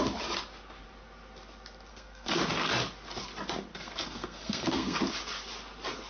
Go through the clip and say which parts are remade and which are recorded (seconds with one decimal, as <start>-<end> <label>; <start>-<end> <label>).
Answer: 0.0-1.9 recorded; 1.9-2.4 remade; 2.4-3.7 recorded; 3.7-5.0 remade; 5.0-6.1 recorded